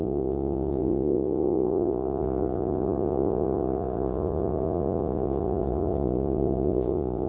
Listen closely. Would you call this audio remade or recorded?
remade